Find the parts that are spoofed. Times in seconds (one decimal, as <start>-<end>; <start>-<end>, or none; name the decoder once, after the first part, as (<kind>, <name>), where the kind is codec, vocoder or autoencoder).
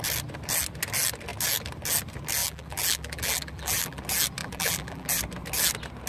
2.4-4.0 (vocoder, BigVGAN v2); 4.4-5.2